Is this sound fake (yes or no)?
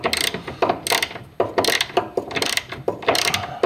no